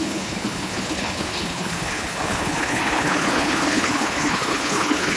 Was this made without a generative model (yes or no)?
no